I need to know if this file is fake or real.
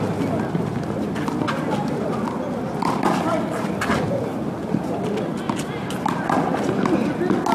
real